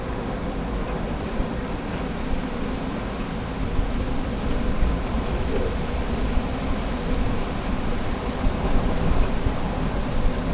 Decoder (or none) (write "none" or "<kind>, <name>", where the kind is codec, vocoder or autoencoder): vocoder, BigVGAN v2